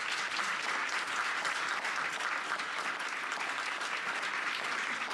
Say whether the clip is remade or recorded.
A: recorded